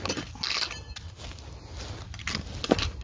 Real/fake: real